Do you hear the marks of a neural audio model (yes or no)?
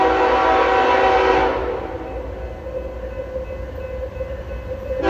no